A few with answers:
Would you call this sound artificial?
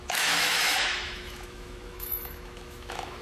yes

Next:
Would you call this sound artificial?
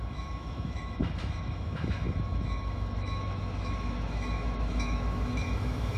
yes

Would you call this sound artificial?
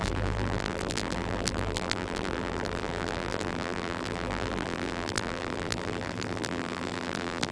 yes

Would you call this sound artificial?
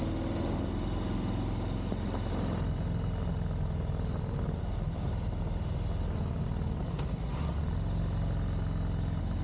no